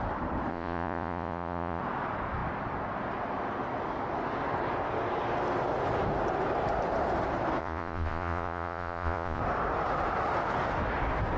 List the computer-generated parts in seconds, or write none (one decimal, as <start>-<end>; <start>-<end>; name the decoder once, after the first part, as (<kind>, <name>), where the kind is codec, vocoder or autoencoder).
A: 0.5-1.8 (vocoder, Vocos); 7.6-9.4